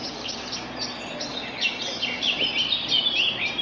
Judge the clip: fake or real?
real